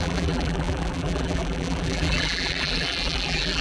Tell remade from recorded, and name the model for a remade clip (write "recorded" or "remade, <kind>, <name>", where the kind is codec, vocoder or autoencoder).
remade, vocoder, BigVGAN v2